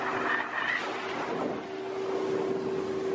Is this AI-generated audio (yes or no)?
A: no